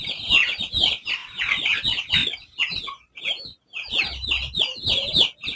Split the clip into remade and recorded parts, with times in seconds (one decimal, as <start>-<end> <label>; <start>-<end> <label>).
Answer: 0.0-5.6 recorded